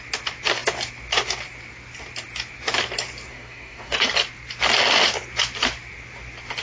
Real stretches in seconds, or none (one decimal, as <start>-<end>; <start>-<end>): 0.0-3.3; 4.1-6.6